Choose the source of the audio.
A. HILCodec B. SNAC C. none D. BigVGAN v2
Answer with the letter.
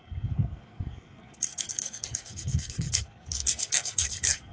B